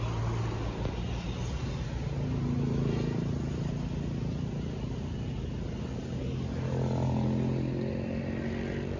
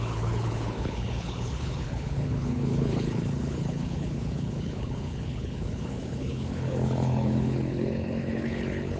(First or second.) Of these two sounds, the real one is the first